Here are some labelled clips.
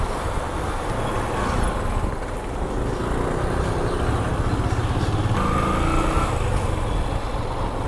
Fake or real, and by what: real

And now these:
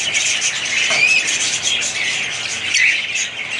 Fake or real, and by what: real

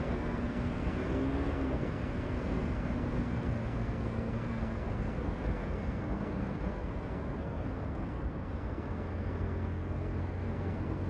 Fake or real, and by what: fake, codec, SNAC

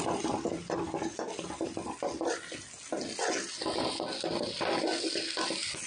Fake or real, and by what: real